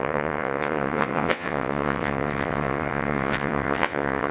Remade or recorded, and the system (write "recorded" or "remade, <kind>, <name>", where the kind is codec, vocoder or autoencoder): remade, vocoder, WaveNeXt